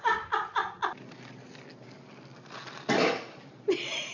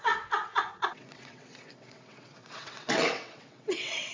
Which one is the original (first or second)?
first